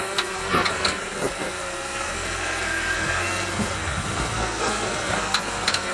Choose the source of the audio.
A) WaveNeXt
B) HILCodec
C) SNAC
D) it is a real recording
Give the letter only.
C